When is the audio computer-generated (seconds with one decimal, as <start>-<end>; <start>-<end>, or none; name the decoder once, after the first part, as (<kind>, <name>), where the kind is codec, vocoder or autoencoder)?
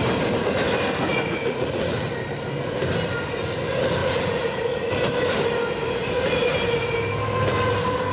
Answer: 1.1-2.1 (vocoder, Vocos); 4.0-4.9